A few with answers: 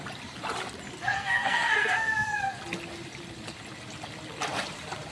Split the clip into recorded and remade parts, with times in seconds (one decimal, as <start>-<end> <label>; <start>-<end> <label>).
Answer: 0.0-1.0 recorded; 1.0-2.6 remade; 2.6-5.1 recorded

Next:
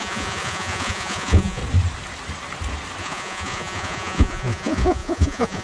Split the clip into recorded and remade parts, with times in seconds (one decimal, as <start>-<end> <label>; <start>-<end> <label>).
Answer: 0.0-1.6 remade; 1.6-3.0 recorded; 3.0-5.6 remade

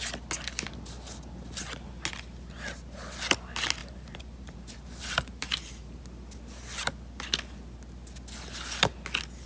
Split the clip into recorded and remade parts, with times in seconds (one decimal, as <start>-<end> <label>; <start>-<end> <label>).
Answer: 0.0-3.8 recorded; 3.8-6.0 remade; 6.0-9.5 recorded